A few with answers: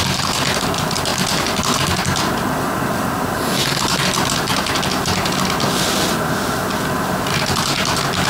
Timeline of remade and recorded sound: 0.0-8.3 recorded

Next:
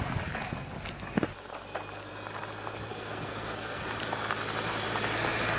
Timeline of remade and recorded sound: 0.0-2.9 recorded; 2.9-3.8 remade; 3.8-5.6 recorded

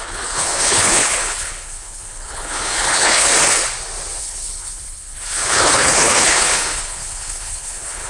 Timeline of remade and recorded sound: 0.0-3.3 remade; 3.3-4.2 recorded; 4.2-8.1 remade

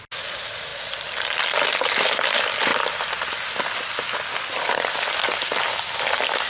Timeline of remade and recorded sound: 0.0-6.5 recorded